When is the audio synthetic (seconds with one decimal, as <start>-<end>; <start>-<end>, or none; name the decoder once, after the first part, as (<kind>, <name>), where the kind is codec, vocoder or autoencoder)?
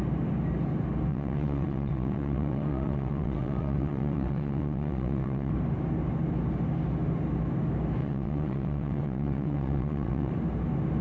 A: 1.1-5.5 (vocoder, WaveNeXt); 8.0-10.3